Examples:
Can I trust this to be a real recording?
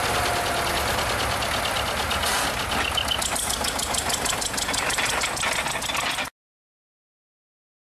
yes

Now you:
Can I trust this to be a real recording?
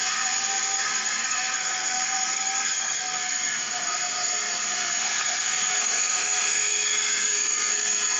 no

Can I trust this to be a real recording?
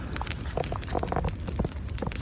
yes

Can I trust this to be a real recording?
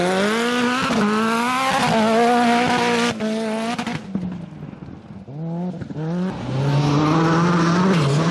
yes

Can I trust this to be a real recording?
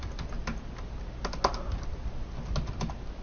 yes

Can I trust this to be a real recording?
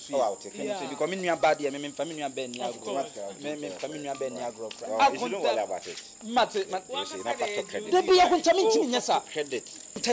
yes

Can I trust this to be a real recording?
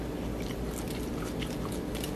yes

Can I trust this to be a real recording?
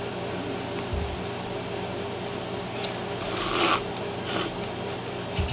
yes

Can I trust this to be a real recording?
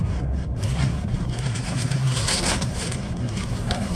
no